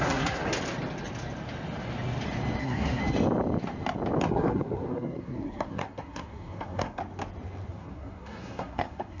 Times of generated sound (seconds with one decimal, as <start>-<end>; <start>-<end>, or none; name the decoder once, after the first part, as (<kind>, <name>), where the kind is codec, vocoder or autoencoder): 0.0-0.4 (codec, SNAC); 2.6-3.0; 4.2-7.0; 7.7-9.2